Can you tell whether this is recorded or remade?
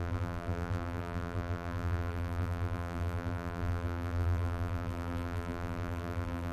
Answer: remade